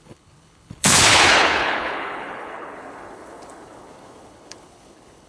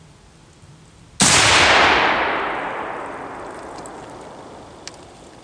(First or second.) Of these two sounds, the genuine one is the second